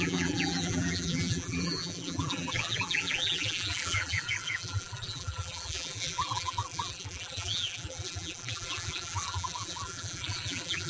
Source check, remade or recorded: remade